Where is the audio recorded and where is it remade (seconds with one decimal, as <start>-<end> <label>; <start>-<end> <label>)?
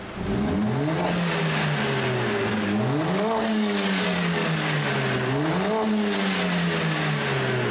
0.0-2.5 recorded; 2.5-4.9 remade; 4.9-7.7 recorded